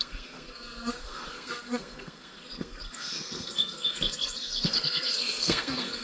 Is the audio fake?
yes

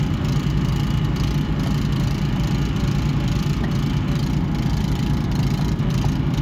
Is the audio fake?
no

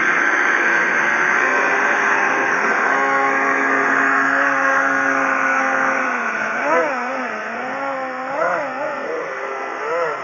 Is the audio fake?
yes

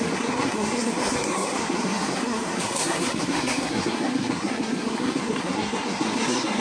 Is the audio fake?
yes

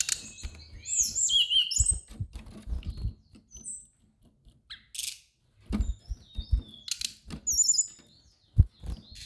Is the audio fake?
no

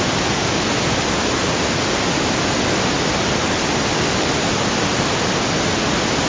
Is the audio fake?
no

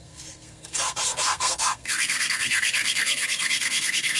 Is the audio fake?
yes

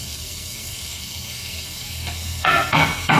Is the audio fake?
yes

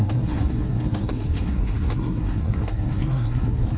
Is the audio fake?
yes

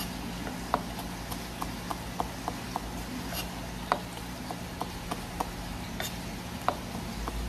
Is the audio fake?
no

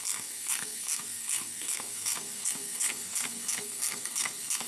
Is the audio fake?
yes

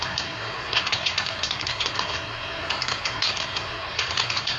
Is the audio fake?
yes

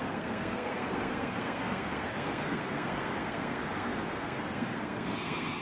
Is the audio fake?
yes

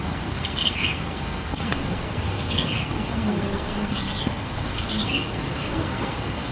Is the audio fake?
yes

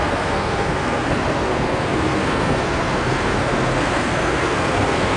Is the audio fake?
yes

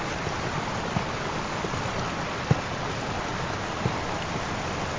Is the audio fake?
no